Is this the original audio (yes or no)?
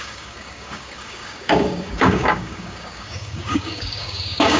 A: no